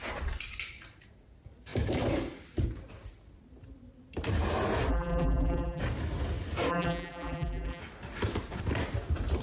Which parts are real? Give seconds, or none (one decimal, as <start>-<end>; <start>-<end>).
0.0-4.9; 5.8-6.7; 7.8-9.4